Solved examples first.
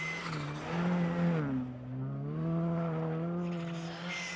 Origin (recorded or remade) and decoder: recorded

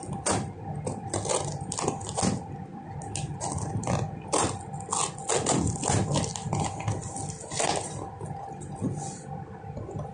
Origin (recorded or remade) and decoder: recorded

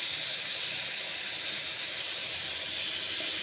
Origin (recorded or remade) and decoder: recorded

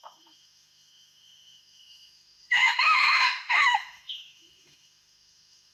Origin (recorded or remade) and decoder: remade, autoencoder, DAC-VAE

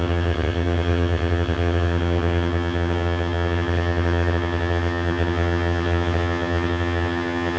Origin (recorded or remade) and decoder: remade, vocoder, HiFi-GAN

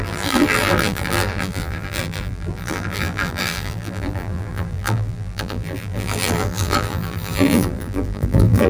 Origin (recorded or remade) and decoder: remade, vocoder, BigVGAN v2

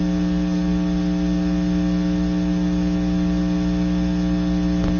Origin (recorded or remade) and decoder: recorded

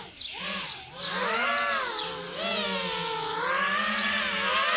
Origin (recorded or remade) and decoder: recorded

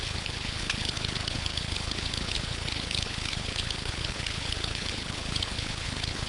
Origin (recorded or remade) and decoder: remade, codec, HILCodec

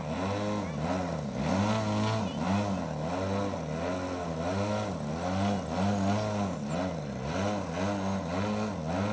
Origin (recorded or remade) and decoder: recorded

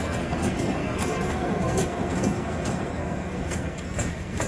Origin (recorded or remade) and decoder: remade, codec, SNAC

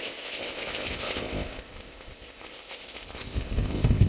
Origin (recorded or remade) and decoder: remade, codec, ZipCodec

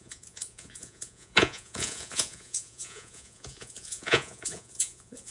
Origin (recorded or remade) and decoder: remade, vocoder, Vocos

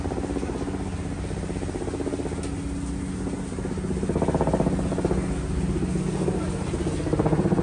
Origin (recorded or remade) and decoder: recorded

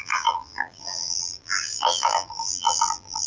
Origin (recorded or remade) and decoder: remade, vocoder, BigVGAN v2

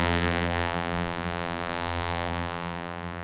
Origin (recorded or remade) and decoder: remade, vocoder, BigVGAN v2